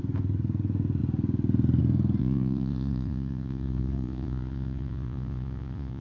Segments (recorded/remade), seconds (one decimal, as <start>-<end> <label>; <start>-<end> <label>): 0.0-2.2 recorded; 2.2-6.0 remade